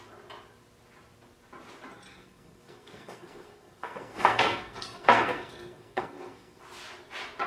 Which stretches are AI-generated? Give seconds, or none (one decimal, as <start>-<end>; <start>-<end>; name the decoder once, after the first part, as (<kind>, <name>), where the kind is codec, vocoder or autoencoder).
2.1-6.6 (codec, SNAC)